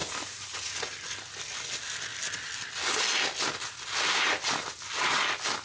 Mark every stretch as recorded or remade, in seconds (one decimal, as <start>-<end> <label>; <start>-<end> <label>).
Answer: 0.0-5.6 recorded